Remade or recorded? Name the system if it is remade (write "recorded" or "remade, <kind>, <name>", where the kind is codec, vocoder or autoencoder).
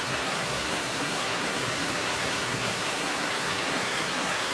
remade, codec, SNAC